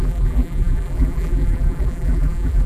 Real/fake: fake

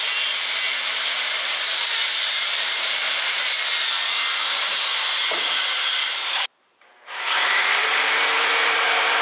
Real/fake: fake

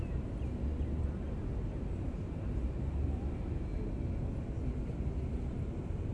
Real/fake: real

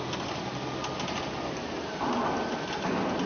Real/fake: real